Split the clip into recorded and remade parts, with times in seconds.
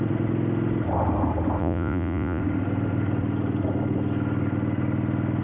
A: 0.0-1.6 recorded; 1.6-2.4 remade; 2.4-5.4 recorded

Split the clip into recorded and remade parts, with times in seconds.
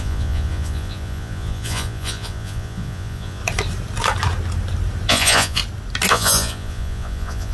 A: 0.0-3.4 remade; 3.4-5.1 recorded; 5.1-5.6 remade; 5.6-6.1 recorded; 6.1-7.5 remade